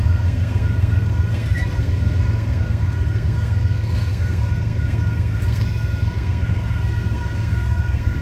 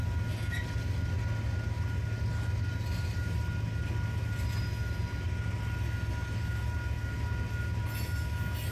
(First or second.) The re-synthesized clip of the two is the first